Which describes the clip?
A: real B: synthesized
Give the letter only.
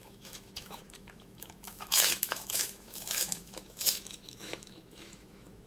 B